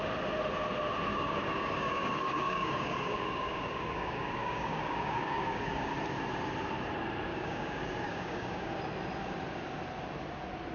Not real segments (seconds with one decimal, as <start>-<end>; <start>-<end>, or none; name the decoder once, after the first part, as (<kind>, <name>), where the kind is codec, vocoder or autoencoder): 1.1-5.9 (codec, DAC); 7.3-8.8